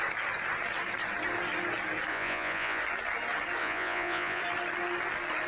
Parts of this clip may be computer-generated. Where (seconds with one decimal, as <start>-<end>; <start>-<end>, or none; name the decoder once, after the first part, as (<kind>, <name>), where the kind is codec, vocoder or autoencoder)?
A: 2.1-2.8 (vocoder, Vocos); 3.6-4.4

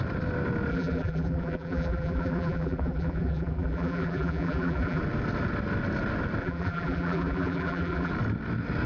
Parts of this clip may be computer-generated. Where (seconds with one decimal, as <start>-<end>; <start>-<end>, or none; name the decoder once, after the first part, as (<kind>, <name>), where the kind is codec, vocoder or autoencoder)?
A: 0.7-5.0 (vocoder, BigVGAN v2); 6.4-8.1

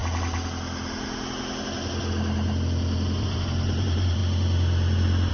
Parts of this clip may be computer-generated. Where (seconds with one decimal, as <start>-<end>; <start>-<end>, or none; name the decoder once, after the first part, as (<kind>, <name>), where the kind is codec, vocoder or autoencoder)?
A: 3.2-4.2 (vocoder, BigVGAN v2)